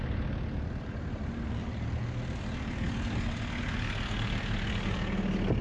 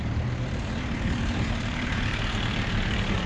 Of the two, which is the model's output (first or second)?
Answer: second